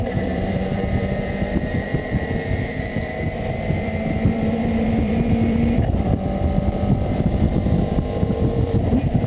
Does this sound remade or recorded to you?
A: remade